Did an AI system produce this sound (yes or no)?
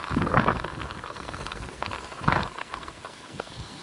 yes